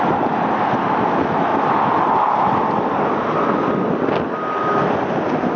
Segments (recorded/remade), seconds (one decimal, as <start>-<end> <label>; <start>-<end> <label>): 0.0-5.6 recorded